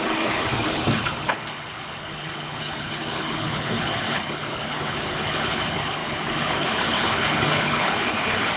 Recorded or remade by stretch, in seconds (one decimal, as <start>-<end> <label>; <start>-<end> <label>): 0.0-8.6 remade